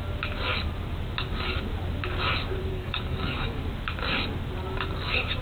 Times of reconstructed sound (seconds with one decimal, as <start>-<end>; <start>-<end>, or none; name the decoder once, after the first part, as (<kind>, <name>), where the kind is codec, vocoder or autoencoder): 2.7-3.6 (codec, DAC)